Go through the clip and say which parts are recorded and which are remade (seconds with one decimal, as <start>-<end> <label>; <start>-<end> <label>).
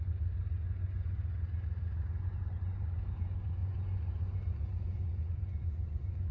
0.0-1.2 remade; 1.2-2.2 recorded; 2.2-6.3 remade